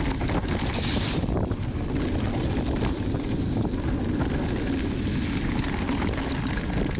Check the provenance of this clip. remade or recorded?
recorded